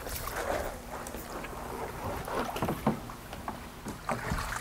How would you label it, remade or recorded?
recorded